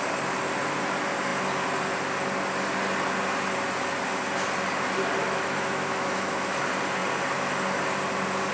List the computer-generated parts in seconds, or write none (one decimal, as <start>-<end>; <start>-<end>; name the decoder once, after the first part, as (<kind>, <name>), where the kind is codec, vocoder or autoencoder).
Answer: 5.2-6.6 (autoencoder, DAC-VAE)

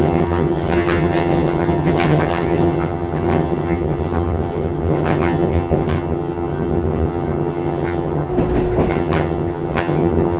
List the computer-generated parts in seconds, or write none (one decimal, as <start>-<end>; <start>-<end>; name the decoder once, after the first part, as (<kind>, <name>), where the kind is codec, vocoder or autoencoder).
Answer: 0.0-8.3 (vocoder, HiFi-GAN); 8.9-10.4

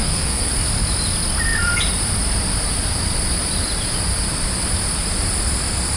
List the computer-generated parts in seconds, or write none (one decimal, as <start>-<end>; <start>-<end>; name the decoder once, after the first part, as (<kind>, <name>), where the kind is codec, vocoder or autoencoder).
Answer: 0.0-0.5 (codec, SNAC)

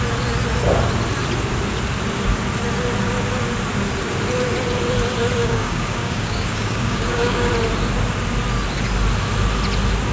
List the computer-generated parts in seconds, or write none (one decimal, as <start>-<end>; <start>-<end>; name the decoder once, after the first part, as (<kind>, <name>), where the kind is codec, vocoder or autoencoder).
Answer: 5.4-7.5 (codec, DAC)

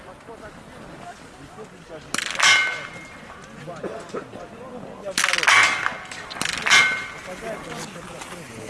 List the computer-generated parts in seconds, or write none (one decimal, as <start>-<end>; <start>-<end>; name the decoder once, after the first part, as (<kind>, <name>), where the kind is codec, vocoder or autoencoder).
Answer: none

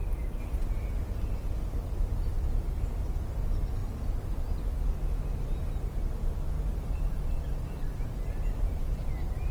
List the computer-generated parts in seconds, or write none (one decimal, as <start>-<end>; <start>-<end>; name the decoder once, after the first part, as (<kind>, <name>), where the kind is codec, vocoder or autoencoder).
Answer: none